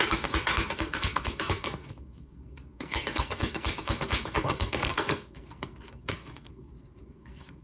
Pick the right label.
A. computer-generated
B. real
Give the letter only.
A